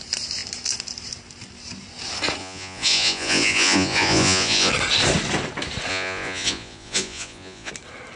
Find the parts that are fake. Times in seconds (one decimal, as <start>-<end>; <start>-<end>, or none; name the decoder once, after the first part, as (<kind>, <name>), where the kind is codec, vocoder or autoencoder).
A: 2.4-4.7 (vocoder, Vocos); 5.9-7.7